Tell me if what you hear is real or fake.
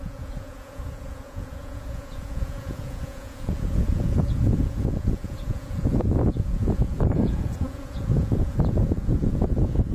fake